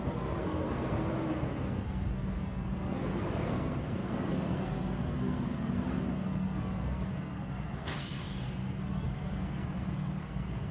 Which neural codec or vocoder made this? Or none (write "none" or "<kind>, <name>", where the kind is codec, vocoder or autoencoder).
codec, SNAC